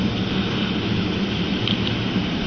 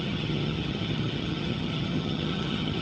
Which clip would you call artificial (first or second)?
second